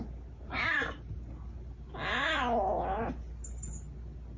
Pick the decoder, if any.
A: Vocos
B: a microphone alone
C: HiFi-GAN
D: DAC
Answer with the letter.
B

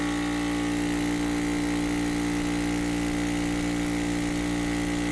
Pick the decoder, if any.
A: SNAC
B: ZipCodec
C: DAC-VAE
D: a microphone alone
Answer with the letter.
D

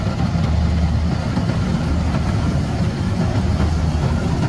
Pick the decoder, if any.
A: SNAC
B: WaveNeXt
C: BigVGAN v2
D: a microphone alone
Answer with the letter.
D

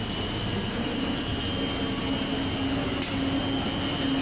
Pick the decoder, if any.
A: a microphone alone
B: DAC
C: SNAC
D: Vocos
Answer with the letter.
A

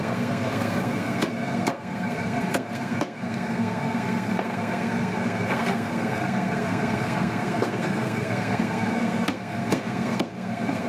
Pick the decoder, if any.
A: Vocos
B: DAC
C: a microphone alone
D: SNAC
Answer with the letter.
D